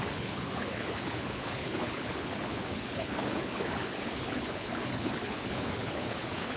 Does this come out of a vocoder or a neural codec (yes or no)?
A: yes